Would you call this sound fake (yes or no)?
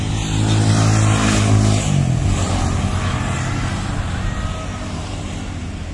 no